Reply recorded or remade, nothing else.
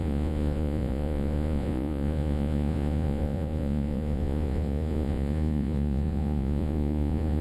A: remade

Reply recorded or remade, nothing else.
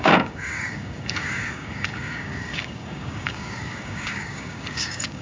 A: remade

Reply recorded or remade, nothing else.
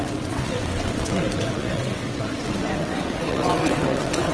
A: remade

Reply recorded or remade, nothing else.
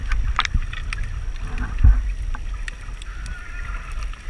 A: recorded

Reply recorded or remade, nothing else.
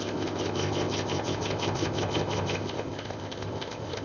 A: remade